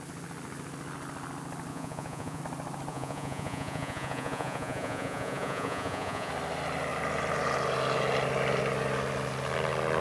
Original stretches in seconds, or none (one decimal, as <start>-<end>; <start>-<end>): 0.0-1.7; 2.4-2.9; 6.3-10.0